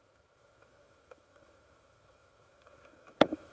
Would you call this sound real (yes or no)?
no